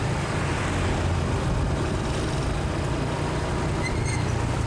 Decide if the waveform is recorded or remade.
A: recorded